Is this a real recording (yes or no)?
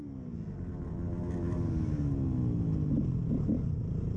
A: yes